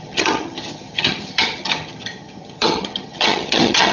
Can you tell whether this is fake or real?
fake